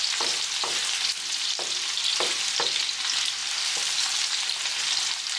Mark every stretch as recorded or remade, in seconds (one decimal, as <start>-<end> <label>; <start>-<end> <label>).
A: 0.0-3.4 recorded; 3.4-4.6 remade; 4.6-5.4 recorded